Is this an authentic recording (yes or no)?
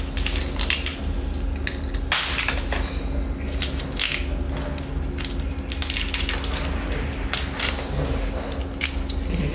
yes